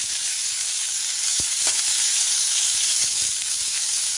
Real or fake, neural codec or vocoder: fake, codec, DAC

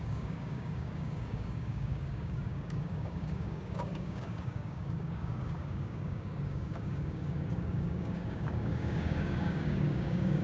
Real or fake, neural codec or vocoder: fake, codec, DAC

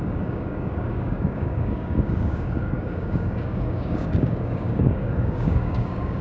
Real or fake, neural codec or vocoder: fake, codec, DAC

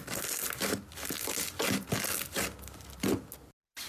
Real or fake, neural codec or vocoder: real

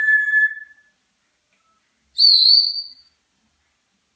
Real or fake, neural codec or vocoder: real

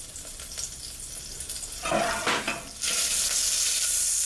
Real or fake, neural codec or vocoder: real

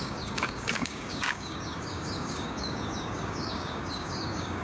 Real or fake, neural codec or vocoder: fake, codec, DAC